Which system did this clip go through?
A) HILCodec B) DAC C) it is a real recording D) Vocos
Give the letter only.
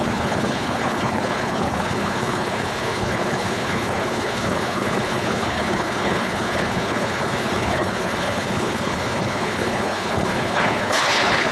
A